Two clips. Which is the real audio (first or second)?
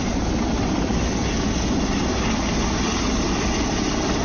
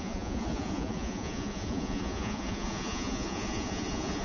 first